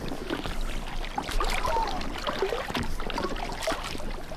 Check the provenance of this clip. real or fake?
real